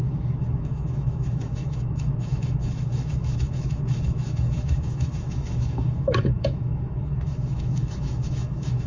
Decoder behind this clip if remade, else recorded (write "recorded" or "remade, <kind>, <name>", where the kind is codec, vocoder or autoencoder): remade, autoencoder, DAC-VAE